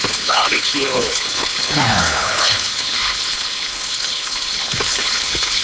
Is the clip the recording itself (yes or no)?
no